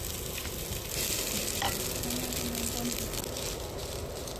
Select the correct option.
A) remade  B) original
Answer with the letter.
B